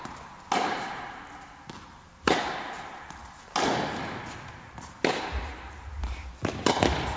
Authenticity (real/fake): real